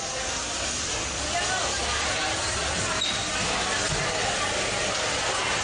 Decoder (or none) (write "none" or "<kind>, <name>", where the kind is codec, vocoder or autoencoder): none